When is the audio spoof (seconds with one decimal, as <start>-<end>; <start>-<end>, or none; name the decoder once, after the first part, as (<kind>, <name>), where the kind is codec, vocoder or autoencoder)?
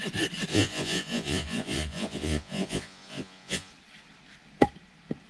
0.5-3.7 (vocoder, Vocos)